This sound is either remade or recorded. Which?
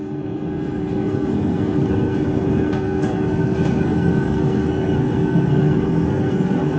remade